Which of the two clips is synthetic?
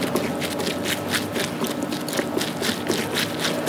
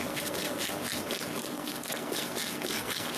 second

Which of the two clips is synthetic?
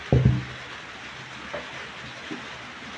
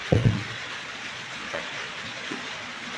second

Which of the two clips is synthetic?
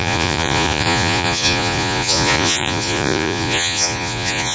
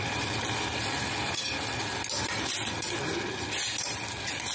first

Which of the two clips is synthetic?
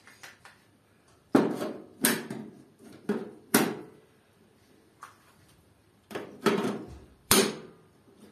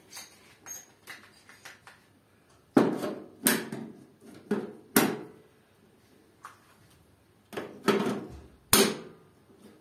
first